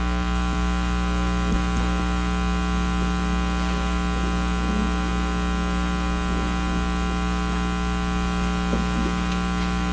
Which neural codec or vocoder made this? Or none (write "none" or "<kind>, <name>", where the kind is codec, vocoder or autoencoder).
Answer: none